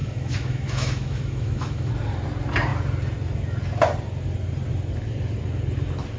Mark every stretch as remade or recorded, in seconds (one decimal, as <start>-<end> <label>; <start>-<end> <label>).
0.0-1.9 remade; 1.9-6.2 recorded